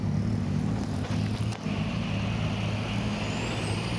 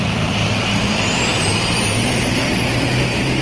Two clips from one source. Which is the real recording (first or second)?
first